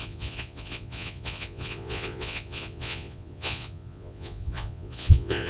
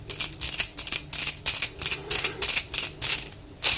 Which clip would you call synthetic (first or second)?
first